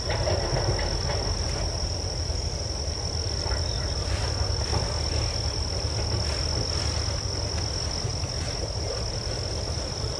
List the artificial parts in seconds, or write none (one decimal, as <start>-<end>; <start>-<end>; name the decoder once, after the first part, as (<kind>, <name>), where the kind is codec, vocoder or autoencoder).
none